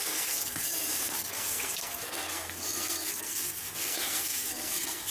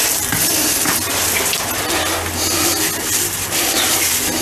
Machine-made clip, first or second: first